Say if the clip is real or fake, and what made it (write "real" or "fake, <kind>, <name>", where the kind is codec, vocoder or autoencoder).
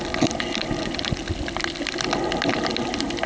real